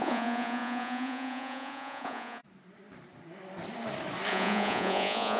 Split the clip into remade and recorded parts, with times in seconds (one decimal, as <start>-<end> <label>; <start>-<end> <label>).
0.0-2.4 remade; 2.4-4.3 recorded; 4.3-5.4 remade